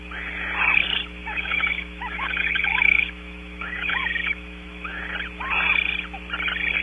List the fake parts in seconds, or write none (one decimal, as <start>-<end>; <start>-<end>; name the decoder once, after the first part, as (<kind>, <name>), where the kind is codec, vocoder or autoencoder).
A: 1.2-5.0 (autoencoder, DAC-VAE)